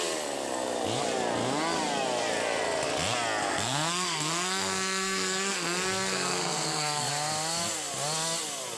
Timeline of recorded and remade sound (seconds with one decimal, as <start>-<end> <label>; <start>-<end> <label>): 0.0-3.4 recorded; 3.4-7.1 remade; 7.1-8.8 recorded

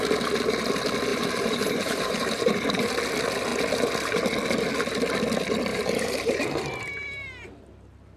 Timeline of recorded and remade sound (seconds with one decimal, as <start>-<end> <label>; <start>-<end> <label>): 0.0-1.1 recorded; 1.1-2.9 remade; 2.9-5.7 recorded; 5.7-7.1 remade; 7.1-8.2 recorded

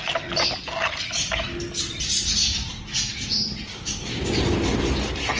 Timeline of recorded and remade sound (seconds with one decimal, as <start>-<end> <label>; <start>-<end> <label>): 0.0-3.7 recorded; 3.7-4.4 remade; 4.4-5.4 recorded